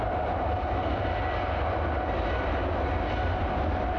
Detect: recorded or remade recorded